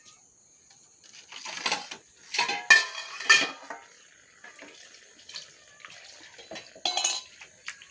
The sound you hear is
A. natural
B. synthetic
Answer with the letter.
A